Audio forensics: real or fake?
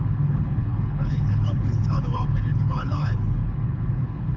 fake